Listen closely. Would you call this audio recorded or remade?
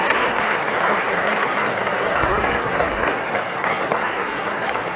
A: remade